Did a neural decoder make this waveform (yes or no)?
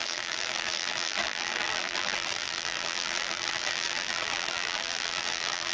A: yes